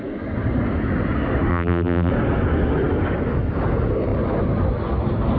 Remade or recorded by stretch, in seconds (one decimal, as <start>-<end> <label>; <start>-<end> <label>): 0.0-1.5 recorded; 1.5-2.1 remade; 2.1-5.4 recorded

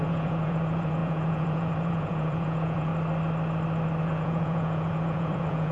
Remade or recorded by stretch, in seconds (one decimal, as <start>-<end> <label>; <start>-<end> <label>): 0.0-2.9 remade; 2.9-4.0 recorded; 4.0-5.7 remade

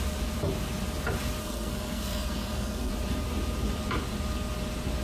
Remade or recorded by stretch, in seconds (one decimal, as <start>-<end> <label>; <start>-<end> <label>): 0.0-1.4 recorded; 1.4-2.9 remade; 2.9-5.0 recorded